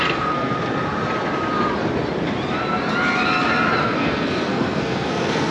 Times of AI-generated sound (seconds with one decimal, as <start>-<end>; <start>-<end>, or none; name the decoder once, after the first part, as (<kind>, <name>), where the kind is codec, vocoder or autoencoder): 0.0-0.5 (codec, SNAC); 3.8-5.5